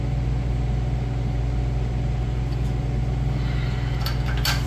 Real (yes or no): yes